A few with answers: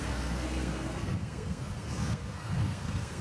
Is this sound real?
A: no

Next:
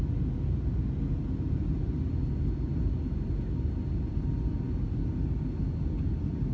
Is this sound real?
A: yes